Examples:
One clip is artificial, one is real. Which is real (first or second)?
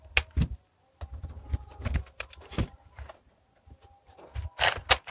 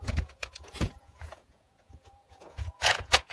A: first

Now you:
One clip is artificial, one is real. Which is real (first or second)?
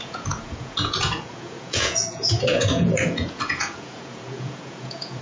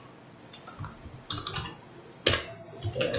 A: second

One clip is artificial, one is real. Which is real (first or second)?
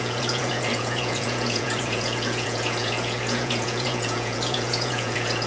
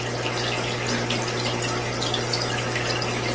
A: second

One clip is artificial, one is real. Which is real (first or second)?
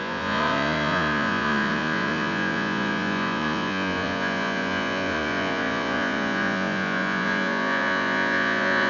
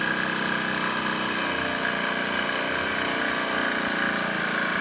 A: second